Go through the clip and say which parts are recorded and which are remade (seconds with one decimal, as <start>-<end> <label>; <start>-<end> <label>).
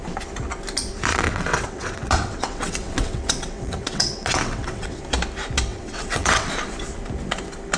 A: 0.0-1.1 recorded; 1.1-5.0 remade; 5.0-5.7 recorded; 5.7-6.5 remade; 6.5-7.8 recorded